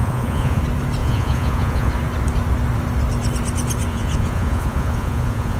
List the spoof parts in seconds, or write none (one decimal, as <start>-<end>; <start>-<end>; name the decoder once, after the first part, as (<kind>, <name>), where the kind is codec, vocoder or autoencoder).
0.0-0.6 (vocoder, Vocos); 1.0-1.9; 3.9-5.6